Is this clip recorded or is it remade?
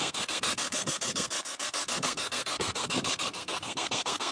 remade